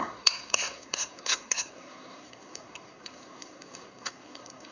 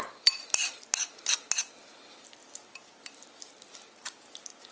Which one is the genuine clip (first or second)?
second